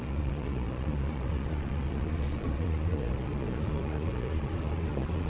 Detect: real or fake fake